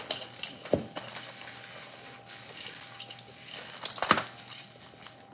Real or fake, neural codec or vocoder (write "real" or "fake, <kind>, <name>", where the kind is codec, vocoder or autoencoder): real